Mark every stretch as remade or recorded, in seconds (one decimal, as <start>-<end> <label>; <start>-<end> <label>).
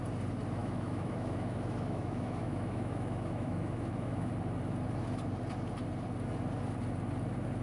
0.0-0.6 recorded; 0.6-4.3 remade; 4.3-7.6 recorded